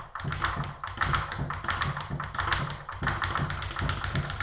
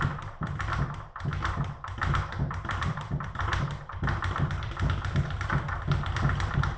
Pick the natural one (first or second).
first